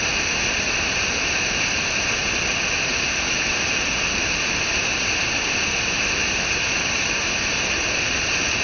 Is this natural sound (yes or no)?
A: yes